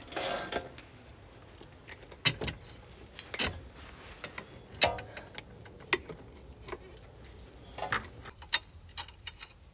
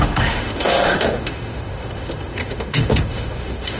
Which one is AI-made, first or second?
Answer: second